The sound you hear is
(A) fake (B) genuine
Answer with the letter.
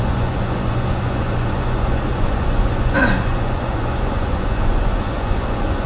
A